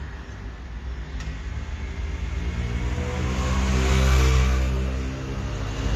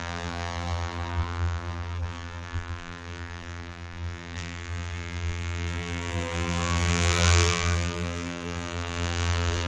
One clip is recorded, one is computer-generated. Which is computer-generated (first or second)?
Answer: second